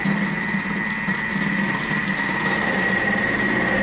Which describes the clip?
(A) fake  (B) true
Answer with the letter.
B